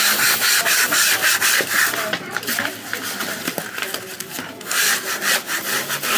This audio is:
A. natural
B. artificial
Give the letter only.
A